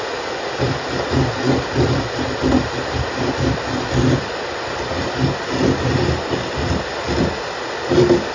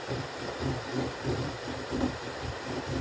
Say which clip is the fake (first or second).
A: second